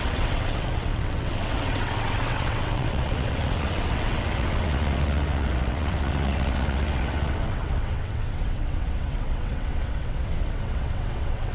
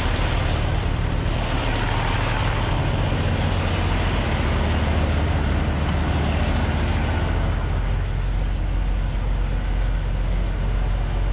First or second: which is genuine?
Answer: second